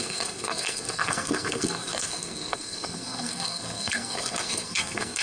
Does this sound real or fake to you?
fake